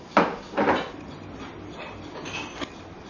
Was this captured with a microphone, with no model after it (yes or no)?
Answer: yes